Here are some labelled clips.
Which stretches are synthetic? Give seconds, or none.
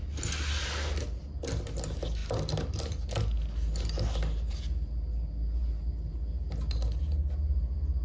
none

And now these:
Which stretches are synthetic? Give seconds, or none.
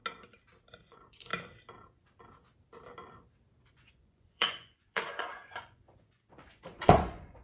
0.8-1.3; 3.7-7.4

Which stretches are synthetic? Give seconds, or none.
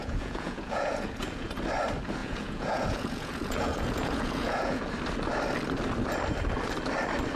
0.0-1.5; 2.2-4.9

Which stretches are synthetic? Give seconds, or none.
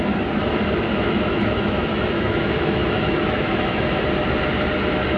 0.9-4.0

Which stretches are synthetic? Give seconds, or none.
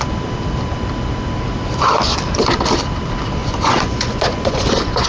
3.4-5.1